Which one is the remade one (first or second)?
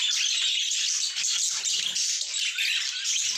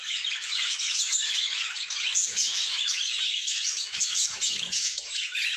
second